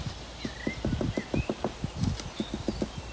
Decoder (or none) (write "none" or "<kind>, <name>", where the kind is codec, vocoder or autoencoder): none